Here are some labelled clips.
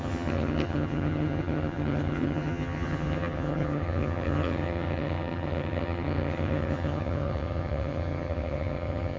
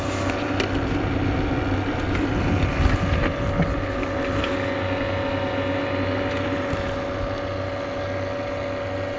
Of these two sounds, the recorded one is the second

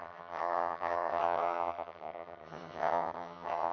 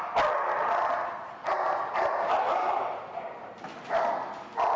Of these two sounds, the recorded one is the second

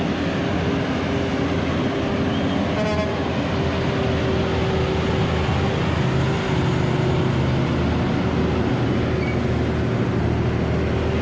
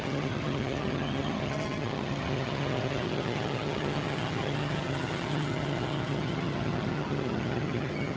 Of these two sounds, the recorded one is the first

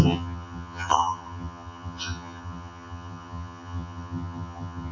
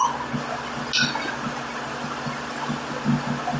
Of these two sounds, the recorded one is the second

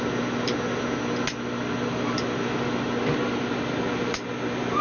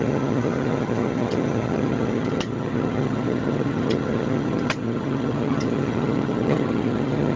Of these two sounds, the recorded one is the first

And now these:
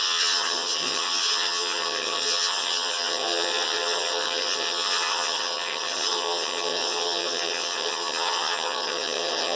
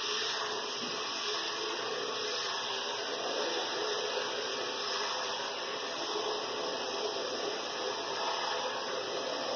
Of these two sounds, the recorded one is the second